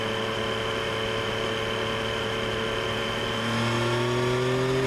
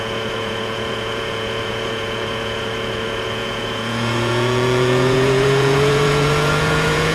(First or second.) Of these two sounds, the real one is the first